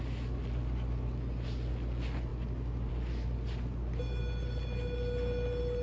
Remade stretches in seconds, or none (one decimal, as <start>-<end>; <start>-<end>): none